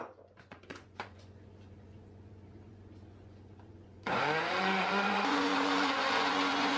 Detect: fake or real fake